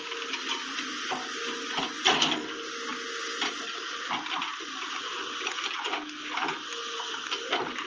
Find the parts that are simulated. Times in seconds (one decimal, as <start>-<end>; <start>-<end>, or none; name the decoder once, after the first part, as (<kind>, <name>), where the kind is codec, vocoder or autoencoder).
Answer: none